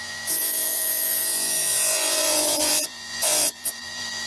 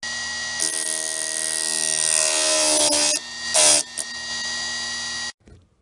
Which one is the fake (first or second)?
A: first